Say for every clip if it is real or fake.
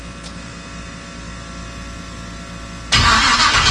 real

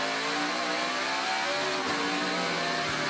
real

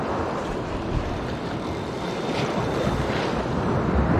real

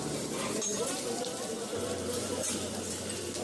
fake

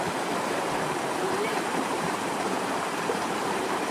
fake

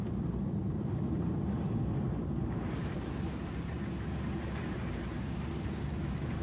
fake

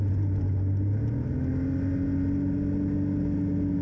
real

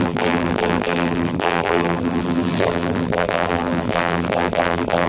fake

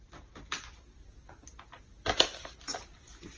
real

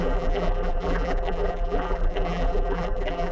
fake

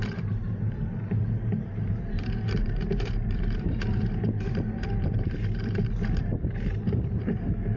fake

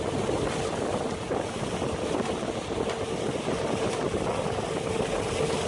real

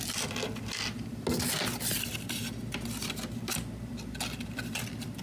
real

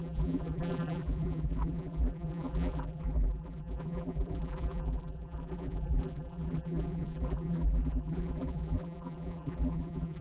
fake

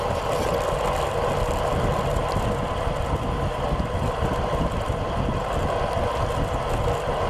real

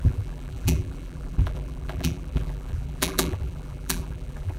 fake